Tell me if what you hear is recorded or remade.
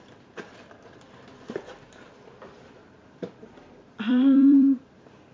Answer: remade